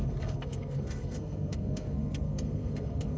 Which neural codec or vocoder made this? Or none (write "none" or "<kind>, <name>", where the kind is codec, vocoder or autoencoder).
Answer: codec, SNAC